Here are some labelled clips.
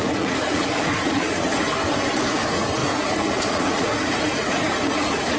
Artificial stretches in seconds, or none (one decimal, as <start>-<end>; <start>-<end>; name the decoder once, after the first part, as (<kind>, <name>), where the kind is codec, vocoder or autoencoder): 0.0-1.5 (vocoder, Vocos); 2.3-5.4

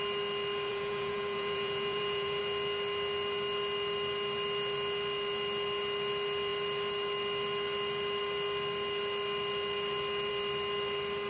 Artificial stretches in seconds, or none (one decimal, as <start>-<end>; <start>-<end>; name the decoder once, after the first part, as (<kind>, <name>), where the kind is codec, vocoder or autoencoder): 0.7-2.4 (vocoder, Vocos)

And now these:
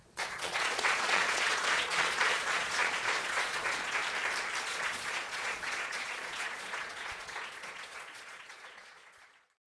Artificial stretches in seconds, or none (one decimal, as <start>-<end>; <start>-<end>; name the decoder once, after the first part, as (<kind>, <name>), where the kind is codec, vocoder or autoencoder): 0.0-4.0 (vocoder, Vocos); 4.6-9.7

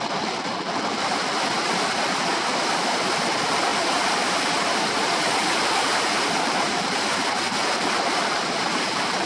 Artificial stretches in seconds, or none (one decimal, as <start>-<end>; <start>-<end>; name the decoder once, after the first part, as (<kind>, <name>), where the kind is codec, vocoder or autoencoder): none

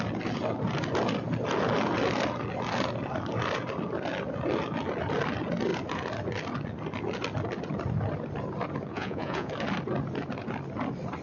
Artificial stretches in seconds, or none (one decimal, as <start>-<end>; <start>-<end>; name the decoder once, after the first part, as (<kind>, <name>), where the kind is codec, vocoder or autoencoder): 8.9-9.5 (vocoder, Vocos)

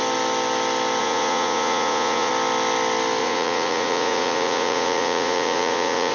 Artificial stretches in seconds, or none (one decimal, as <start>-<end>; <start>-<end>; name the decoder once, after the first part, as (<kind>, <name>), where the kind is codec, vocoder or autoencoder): 1.0-2.3 (vocoder, Vocos); 3.2-6.1

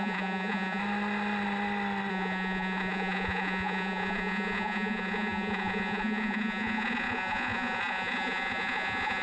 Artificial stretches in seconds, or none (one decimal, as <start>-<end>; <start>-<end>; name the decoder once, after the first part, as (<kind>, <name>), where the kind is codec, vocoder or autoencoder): 0.0-0.8 (vocoder, Vocos); 2.1-9.2

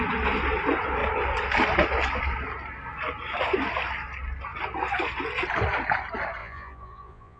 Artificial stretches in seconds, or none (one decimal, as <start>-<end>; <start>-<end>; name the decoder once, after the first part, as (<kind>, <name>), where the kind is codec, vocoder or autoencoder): 6.4-7.4 (vocoder, Vocos)